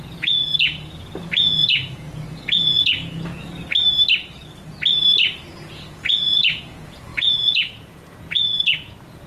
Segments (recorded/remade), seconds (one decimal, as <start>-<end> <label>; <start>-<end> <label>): 0.0-3.4 remade; 3.4-5.5 recorded; 5.5-9.3 remade